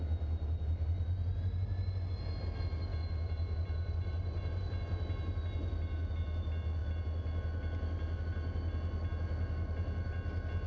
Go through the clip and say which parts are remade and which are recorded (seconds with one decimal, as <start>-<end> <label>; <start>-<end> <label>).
0.0-10.7 recorded